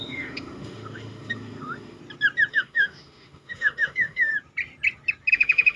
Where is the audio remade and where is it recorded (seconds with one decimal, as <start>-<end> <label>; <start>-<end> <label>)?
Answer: 0.0-2.0 remade; 2.0-2.5 recorded; 2.5-4.3 remade; 4.3-5.3 recorded; 5.3-5.8 remade